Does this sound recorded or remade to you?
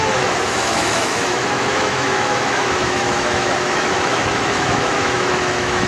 remade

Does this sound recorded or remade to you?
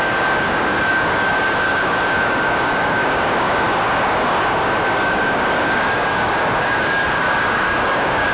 remade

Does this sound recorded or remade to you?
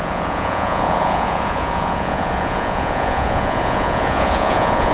remade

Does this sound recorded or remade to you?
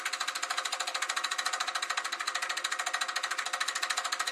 recorded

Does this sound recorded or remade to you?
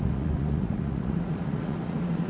remade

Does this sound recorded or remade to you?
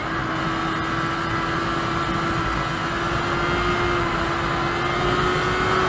recorded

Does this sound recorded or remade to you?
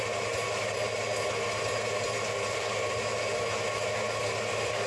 recorded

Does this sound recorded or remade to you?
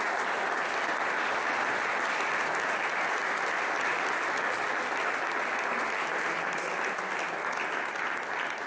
recorded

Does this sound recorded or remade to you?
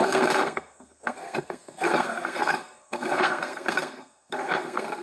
remade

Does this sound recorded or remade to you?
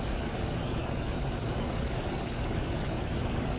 remade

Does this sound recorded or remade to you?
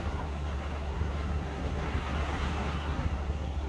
remade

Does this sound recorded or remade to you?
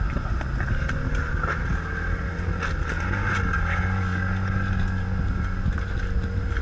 recorded